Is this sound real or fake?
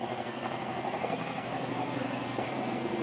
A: fake